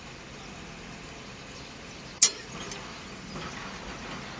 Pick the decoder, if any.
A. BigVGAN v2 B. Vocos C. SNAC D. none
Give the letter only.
D